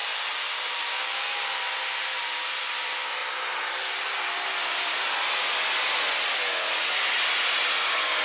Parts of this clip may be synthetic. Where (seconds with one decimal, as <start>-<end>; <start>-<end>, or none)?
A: none